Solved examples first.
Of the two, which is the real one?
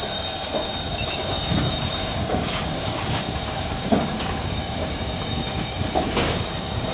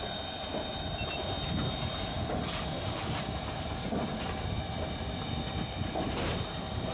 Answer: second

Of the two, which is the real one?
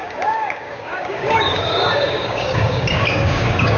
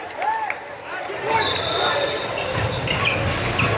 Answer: second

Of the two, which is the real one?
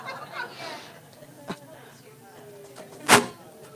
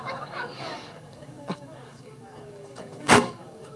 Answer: first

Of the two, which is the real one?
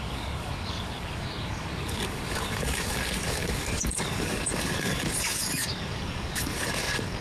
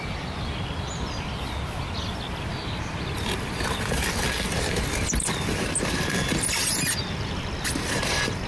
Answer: second